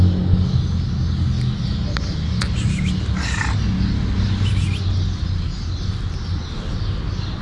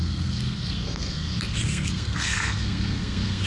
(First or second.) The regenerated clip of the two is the second